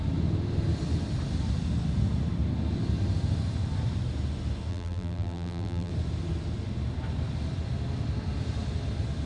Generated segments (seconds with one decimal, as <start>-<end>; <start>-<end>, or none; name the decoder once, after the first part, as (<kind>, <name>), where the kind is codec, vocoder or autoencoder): 4.7-5.9 (vocoder, BigVGAN v2)